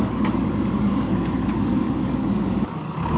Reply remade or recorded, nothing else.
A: remade